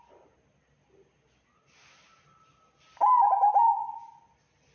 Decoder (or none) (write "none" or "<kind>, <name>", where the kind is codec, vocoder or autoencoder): none